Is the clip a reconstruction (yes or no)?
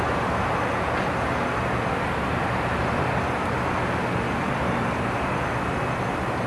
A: no